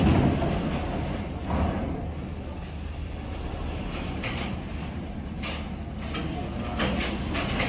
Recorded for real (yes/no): yes